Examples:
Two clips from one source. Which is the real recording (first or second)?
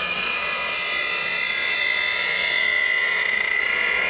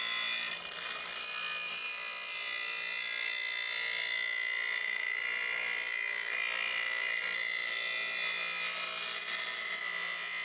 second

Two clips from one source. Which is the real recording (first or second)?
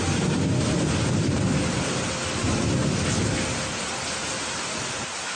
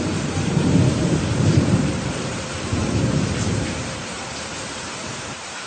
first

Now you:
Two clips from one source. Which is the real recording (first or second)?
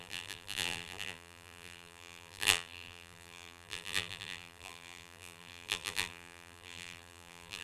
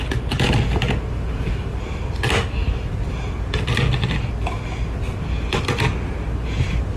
second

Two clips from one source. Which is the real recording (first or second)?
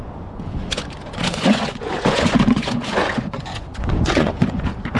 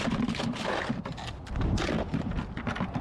second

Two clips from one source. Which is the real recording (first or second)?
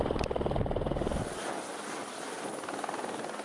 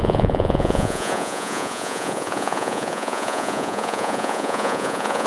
first